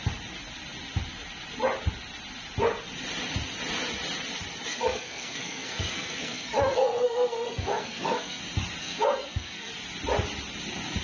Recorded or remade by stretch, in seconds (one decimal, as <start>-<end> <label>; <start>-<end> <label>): 0.0-4.7 recorded; 4.7-8.4 remade; 8.4-8.8 recorded; 8.8-9.7 remade; 9.7-11.0 recorded

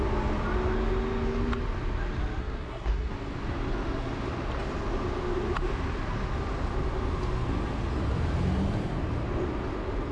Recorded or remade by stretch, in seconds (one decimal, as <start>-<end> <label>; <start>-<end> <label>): 0.0-2.4 recorded; 2.4-3.1 remade; 3.1-10.1 recorded

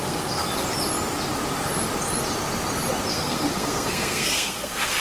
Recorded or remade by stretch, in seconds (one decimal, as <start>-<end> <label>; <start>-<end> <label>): 0.0-0.4 remade; 0.4-3.1 recorded; 3.1-5.0 remade